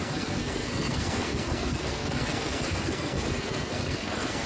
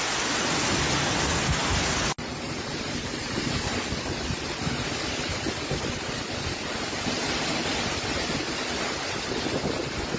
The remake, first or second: first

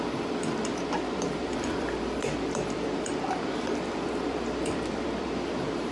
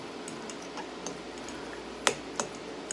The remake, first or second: first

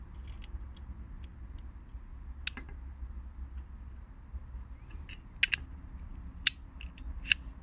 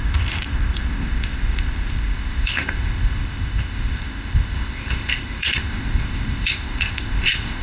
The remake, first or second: second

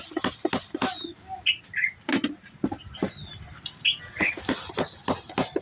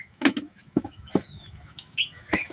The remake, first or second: second